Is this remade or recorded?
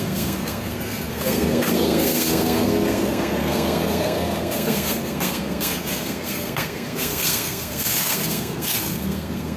remade